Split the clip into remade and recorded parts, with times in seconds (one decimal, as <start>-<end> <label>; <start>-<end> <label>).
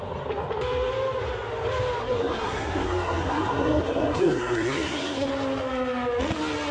0.0-2.0 recorded; 2.0-5.3 remade; 5.3-6.7 recorded